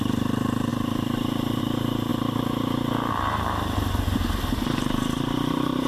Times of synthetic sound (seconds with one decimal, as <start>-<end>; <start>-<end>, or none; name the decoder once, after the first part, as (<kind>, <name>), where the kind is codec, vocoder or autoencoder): 0.0-2.1 (vocoder, BigVGAN v2); 3.1-5.9